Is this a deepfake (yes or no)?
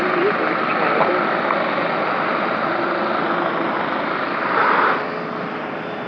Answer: no